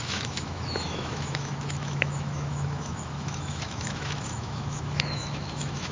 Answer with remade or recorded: remade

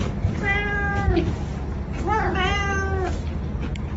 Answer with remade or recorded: recorded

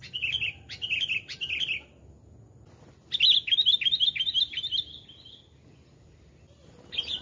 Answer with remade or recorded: recorded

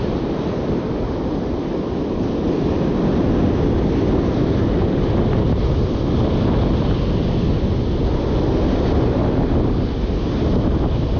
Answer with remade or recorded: recorded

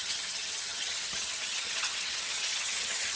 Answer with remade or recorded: remade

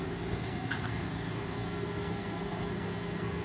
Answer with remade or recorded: remade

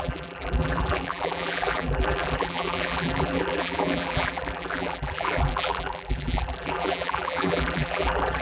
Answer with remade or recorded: remade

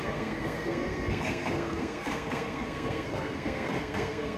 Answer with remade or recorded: remade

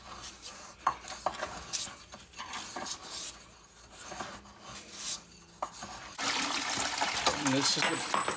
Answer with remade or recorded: recorded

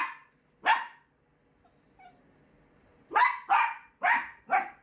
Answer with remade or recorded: recorded